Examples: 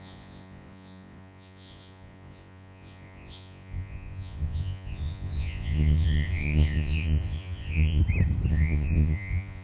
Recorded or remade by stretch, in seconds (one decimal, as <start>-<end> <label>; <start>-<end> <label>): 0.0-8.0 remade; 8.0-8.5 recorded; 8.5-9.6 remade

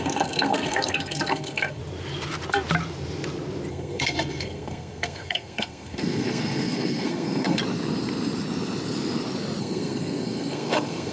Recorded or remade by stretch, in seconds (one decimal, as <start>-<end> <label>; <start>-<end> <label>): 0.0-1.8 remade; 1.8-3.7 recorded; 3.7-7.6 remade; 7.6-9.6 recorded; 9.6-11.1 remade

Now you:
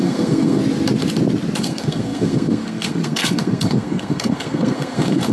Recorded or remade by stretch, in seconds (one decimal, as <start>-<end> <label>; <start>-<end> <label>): 0.0-0.6 remade; 0.6-1.6 recorded; 1.6-5.3 remade

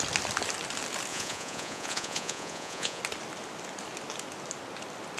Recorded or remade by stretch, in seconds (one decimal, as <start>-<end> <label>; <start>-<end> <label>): 0.0-1.1 recorded; 1.1-3.0 remade; 3.0-5.2 recorded

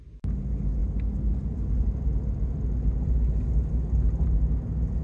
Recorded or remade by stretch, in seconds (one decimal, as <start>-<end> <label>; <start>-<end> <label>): 0.0-5.0 recorded

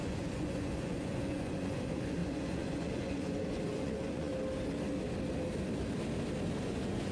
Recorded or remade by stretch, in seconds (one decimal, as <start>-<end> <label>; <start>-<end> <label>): 0.0-4.3 remade; 4.3-6.6 recorded; 6.6-7.1 remade

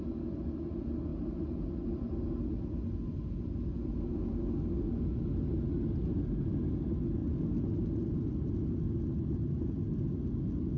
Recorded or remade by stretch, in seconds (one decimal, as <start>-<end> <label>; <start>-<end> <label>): 0.0-10.8 recorded